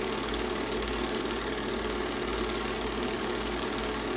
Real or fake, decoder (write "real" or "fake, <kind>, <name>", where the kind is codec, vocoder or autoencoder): fake, codec, DAC